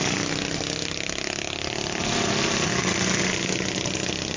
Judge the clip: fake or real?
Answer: real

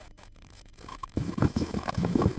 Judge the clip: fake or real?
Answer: fake